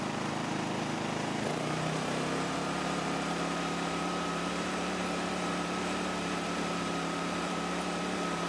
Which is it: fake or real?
fake